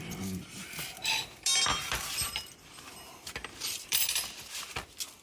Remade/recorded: recorded